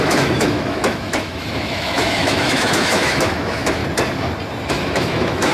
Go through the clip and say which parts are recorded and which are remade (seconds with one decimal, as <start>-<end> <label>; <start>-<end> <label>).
0.0-3.8 remade; 3.8-4.7 recorded; 4.7-5.5 remade